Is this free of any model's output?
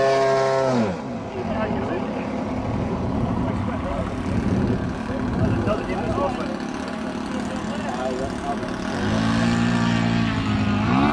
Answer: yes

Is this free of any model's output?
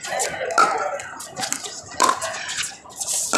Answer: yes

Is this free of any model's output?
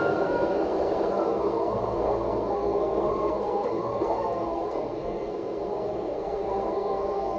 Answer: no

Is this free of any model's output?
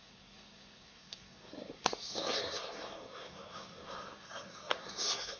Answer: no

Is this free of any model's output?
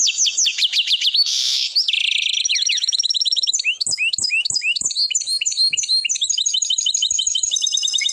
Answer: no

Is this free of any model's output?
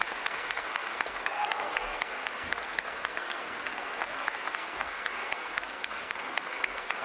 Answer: no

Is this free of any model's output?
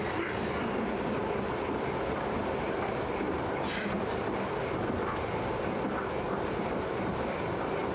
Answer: no